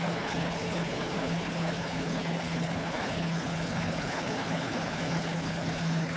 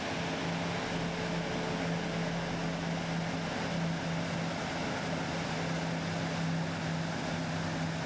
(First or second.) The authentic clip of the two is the second